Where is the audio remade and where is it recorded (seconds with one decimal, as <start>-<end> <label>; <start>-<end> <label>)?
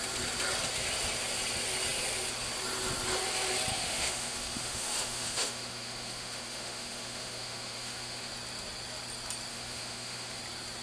0.0-3.7 recorded; 3.7-8.3 remade; 8.3-9.5 recorded; 9.5-10.4 remade; 10.4-10.8 recorded